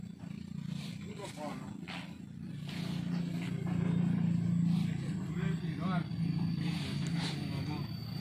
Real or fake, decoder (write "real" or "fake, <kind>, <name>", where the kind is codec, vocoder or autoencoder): real